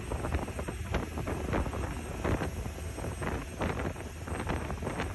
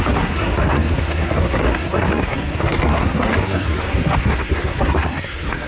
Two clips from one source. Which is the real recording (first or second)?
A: first